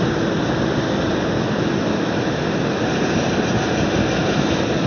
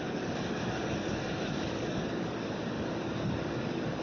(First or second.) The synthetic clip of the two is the second